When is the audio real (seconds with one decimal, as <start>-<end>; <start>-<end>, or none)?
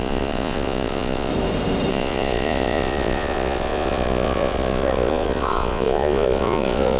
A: 1.3-1.9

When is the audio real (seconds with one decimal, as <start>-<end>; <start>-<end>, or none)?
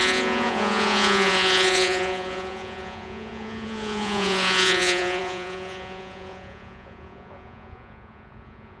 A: none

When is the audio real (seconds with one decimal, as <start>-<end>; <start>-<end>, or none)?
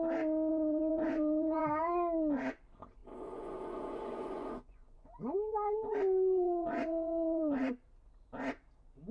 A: 0.0-0.5; 1.8-3.0; 7.7-9.1